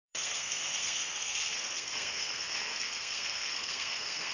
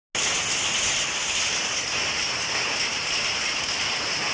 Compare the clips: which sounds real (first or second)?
second